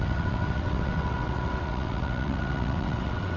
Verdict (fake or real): fake